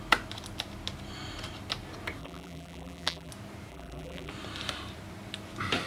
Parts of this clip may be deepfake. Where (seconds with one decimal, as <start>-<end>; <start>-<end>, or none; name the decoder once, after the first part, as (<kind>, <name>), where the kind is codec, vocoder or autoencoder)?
2.2-3.3 (vocoder, BigVGAN v2); 3.7-4.3